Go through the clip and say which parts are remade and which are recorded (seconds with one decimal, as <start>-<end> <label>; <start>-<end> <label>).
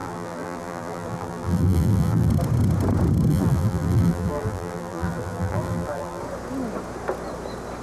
0.0-2.3 remade; 2.3-3.3 recorded; 3.3-6.2 remade; 6.2-7.8 recorded